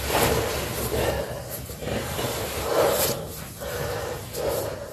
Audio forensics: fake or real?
real